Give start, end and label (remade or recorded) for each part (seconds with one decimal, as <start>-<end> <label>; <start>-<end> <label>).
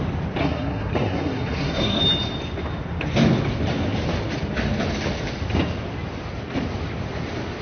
0.0-0.4 recorded; 0.4-2.0 remade; 2.0-7.6 recorded